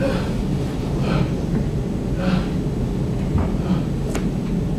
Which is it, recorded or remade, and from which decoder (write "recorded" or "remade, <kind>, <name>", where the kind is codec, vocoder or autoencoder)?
recorded